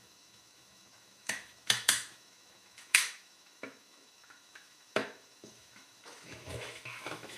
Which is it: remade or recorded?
remade